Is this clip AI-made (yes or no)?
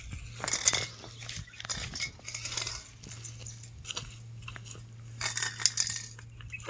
no